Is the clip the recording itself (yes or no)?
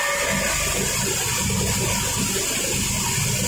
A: yes